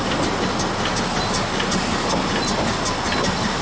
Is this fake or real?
real